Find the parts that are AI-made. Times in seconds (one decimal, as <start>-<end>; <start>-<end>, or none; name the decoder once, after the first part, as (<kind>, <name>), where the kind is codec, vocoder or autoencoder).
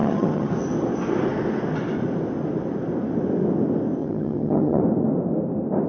0.0-0.5 (vocoder, HiFi-GAN); 4.0-4.8